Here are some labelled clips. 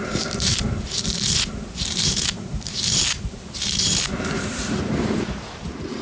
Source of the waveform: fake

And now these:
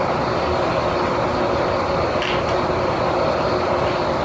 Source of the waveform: real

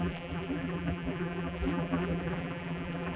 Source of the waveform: fake